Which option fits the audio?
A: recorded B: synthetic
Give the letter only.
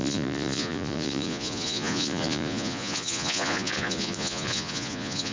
B